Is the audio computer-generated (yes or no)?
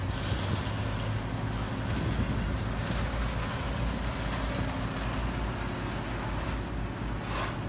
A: no